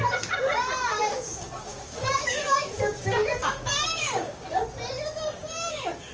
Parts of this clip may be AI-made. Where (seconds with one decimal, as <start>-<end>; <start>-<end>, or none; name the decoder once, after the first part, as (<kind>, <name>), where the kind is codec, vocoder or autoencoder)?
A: 0.9-4.6 (codec, DAC); 5.4-6.1